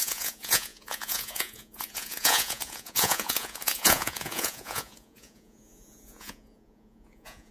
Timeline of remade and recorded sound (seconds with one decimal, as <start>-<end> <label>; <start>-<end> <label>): 0.0-7.5 remade